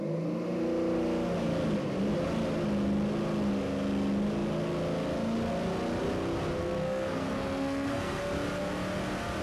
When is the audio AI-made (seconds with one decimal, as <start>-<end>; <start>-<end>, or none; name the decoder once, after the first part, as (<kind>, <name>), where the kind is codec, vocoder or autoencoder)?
6.6-8.2 (codec, SNAC)